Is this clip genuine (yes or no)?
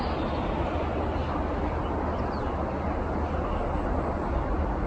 yes